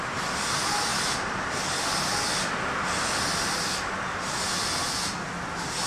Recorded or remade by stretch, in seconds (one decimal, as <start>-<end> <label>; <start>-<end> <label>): 0.0-0.9 recorded; 0.9-2.4 remade; 2.4-5.9 recorded

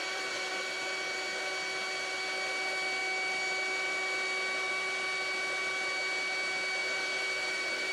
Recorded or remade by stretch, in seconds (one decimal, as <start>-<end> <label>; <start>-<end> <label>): 0.0-0.6 remade; 0.6-6.8 recorded; 6.8-7.9 remade

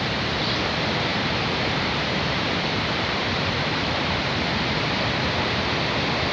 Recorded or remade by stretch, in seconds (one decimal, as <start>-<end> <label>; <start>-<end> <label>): 0.0-1.1 recorded; 1.1-4.9 remade; 4.9-6.3 recorded

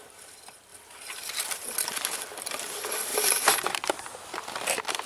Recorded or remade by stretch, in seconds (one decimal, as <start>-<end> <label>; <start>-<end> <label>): 0.0-3.1 recorded; 3.1-4.0 remade; 4.0-5.1 recorded

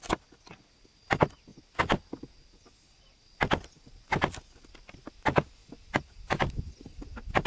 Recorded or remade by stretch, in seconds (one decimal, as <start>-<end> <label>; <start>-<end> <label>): 0.0-7.5 recorded

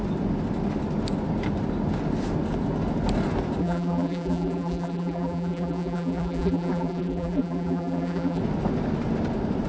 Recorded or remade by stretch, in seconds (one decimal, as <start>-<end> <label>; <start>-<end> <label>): 0.0-3.6 recorded; 3.6-8.4 remade; 8.4-9.7 recorded

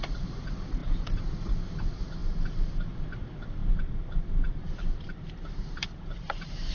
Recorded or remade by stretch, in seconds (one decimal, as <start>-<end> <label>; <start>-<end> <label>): 0.0-3.6 recorded; 3.6-6.7 remade